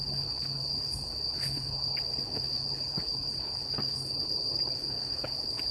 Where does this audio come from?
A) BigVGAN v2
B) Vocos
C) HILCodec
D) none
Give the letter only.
C